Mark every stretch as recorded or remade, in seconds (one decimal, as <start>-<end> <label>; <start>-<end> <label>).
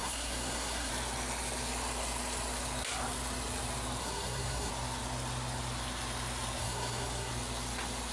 0.0-0.9 remade; 0.9-4.0 recorded; 4.0-4.7 remade; 4.7-6.6 recorded; 6.6-7.3 remade; 7.3-8.1 recorded